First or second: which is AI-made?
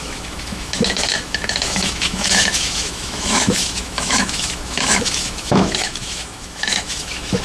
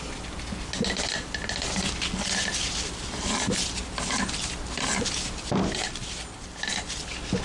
first